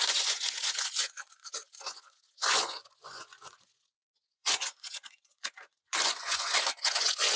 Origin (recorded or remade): remade